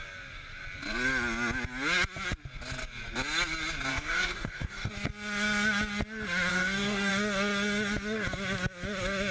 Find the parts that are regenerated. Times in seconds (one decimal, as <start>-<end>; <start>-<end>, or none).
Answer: 3.9-4.9; 6.5-7.1